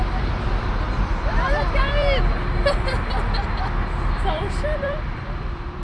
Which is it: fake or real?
fake